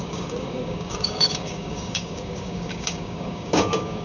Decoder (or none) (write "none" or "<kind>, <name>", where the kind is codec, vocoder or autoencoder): codec, DAC